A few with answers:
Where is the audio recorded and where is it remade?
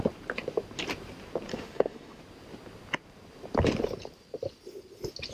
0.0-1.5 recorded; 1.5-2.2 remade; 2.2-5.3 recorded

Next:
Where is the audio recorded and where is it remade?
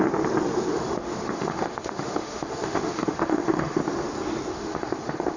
0.0-0.7 recorded; 0.7-3.8 remade; 3.8-4.5 recorded; 4.5-5.4 remade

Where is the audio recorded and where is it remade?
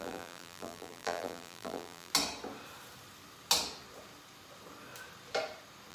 0.0-2.1 remade; 2.1-5.9 recorded